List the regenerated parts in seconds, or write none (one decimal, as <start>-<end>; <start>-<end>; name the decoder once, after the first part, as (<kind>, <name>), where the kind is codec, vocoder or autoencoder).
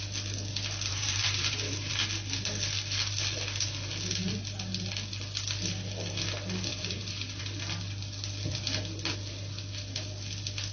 0.9-1.9 (vocoder, BigVGAN v2); 6.7-7.4